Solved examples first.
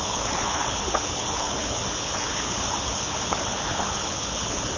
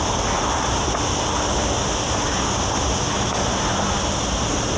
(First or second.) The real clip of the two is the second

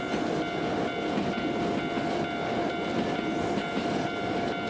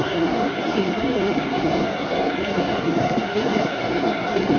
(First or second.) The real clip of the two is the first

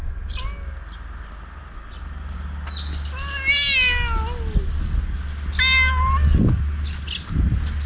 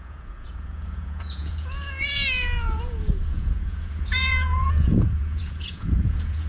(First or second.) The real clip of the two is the first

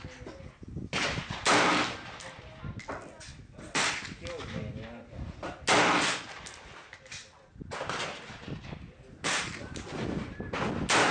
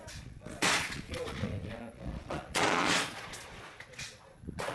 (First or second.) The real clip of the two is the first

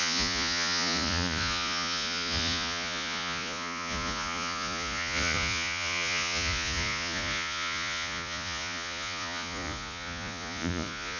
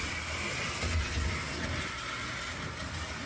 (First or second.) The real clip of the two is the second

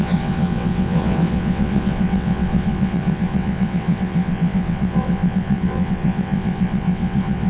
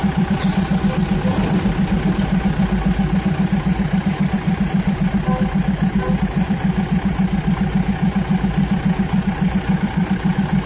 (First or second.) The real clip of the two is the second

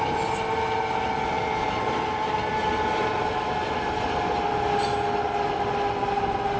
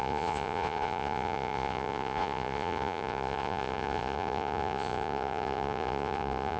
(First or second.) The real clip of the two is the first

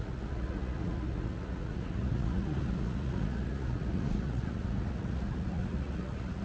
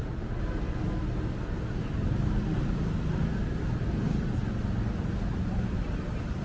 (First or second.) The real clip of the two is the second